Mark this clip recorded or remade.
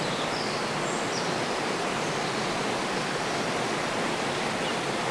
recorded